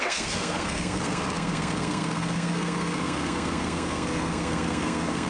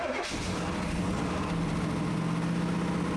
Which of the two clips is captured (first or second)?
second